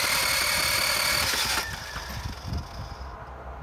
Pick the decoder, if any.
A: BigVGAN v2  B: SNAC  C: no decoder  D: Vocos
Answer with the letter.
C